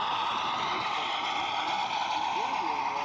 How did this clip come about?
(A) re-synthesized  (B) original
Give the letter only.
B